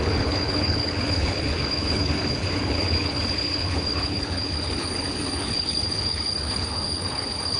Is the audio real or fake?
fake